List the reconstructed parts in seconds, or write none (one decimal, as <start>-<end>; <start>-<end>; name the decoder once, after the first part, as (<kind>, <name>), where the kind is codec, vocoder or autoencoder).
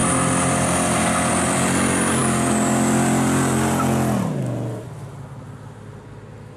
none